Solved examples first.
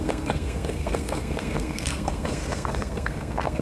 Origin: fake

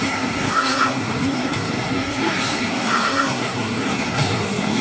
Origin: fake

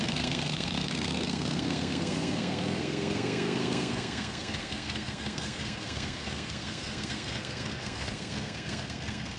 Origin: fake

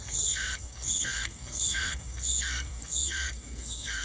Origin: fake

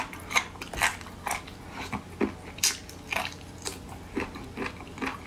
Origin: real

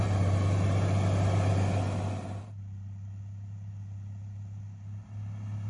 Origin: real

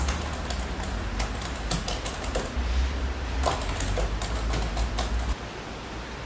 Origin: real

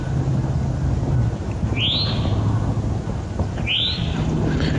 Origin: real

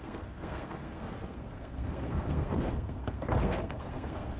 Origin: fake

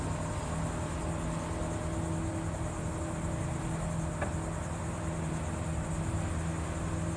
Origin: real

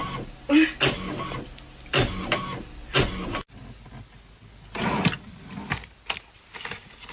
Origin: real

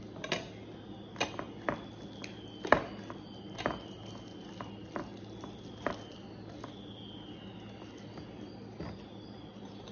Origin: real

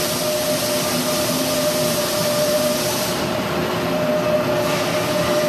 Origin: real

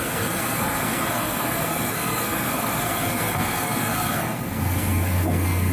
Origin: fake